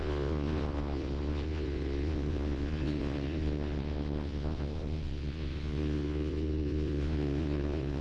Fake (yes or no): yes